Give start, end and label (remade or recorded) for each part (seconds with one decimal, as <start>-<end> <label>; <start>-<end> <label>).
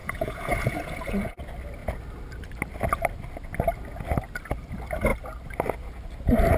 0.0-1.4 remade; 1.4-6.6 recorded